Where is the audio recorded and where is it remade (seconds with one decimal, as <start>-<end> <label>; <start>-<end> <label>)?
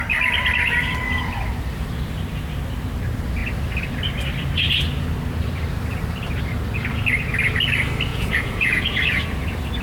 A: 0.0-8.1 recorded; 8.1-9.2 remade; 9.2-9.8 recorded